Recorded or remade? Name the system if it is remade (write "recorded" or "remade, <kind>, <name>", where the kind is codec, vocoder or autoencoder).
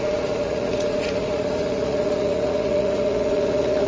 remade, vocoder, Vocos